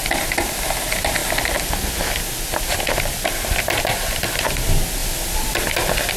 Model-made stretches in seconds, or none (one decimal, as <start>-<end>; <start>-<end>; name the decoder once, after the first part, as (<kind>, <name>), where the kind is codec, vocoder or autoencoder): none

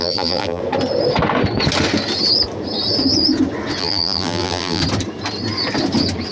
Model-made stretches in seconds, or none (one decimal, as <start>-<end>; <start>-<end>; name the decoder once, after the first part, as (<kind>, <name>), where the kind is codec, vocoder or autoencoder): 0.0-0.6 (vocoder, BigVGAN v2); 3.8-4.8